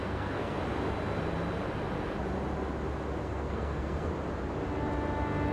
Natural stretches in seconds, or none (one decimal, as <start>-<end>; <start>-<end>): 0.6-3.2; 4.1-5.5